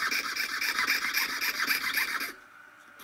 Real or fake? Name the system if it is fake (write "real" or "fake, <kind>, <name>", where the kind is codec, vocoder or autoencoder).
real